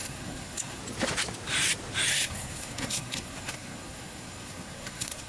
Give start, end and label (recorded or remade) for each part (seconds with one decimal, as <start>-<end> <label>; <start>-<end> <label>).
0.0-0.8 remade; 0.8-2.1 recorded; 2.1-5.3 remade